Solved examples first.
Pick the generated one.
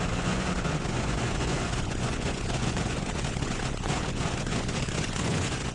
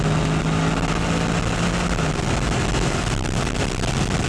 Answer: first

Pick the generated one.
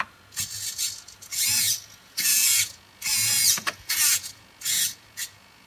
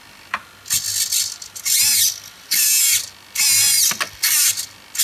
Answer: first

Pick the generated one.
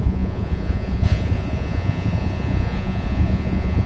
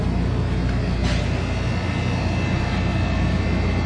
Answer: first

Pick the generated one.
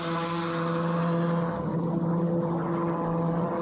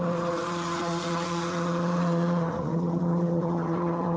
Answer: second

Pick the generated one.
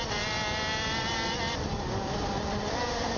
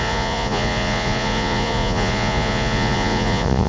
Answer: second